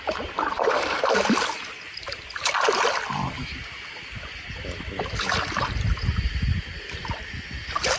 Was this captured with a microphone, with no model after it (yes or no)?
yes